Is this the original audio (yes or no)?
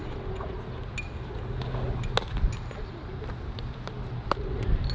yes